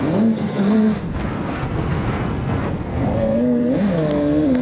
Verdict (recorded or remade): remade